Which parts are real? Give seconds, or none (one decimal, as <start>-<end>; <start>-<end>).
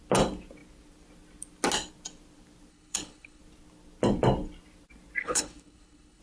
0.0-2.7; 3.4-5.2